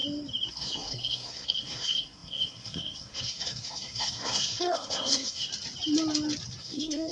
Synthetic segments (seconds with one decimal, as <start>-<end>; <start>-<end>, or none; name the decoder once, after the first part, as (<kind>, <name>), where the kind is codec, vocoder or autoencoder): 0.5-5.5 (codec, SNAC); 6.6-7.1